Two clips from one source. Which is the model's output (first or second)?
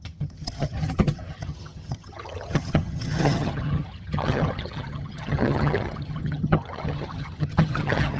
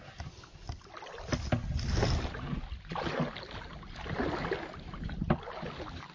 first